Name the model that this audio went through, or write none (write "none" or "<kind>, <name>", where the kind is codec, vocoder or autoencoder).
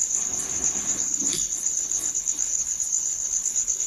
codec, HILCodec